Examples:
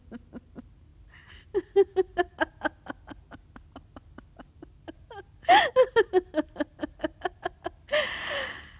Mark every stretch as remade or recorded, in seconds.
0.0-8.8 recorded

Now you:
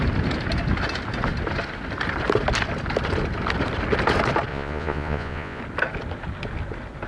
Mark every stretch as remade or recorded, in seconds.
0.0-4.5 recorded; 4.5-5.6 remade; 5.6-7.1 recorded

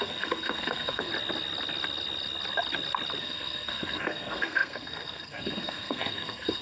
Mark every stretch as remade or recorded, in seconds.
0.0-1.1 remade; 1.1-3.2 recorded; 3.2-6.6 remade

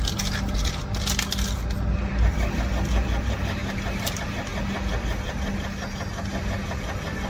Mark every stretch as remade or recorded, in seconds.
0.0-7.3 recorded

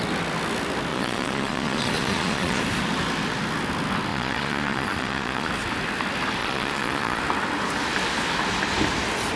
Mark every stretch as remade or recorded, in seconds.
0.0-0.9 recorded; 0.9-2.6 remade; 2.6-4.1 recorded; 4.1-5.5 remade; 5.5-6.4 recorded; 6.4-7.2 remade; 7.2-9.4 recorded